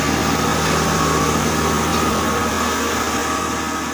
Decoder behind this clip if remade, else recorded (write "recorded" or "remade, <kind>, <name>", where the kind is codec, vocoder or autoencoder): recorded